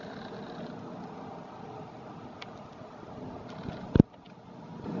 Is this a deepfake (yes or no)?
no